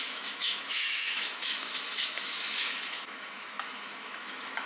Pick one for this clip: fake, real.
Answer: fake